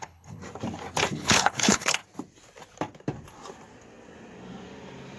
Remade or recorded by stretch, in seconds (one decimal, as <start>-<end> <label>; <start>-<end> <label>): 0.0-0.4 remade; 0.4-1.1 recorded; 1.1-2.0 remade; 2.0-5.2 recorded